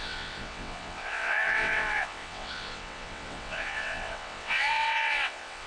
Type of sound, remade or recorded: remade